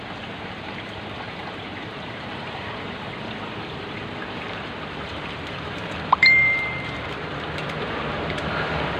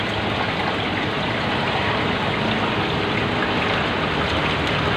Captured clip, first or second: second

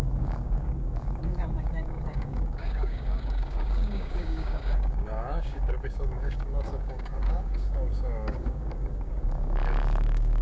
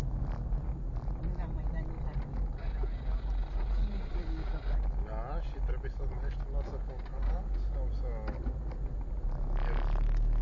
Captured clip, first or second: second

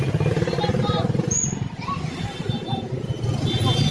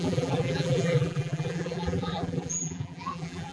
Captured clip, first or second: first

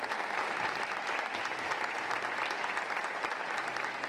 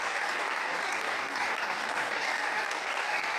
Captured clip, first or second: first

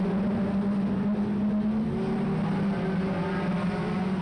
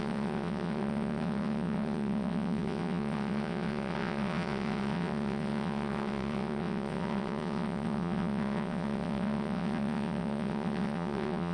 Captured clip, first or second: first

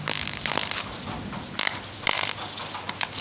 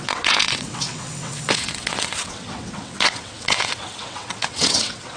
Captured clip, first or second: first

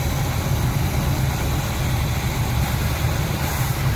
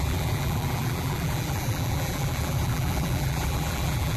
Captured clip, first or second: first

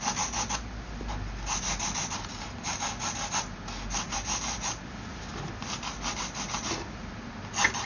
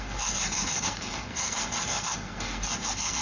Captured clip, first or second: first